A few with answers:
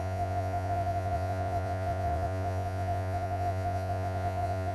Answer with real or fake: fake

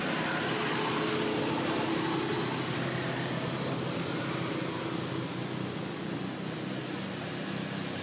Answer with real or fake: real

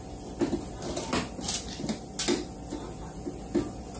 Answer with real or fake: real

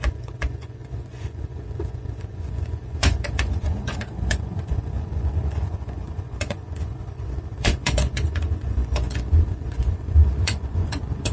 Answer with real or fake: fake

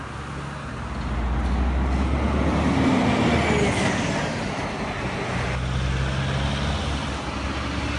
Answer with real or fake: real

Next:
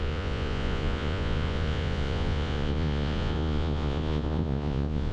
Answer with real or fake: fake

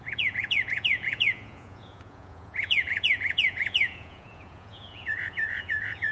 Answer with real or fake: fake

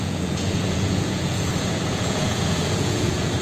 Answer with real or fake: fake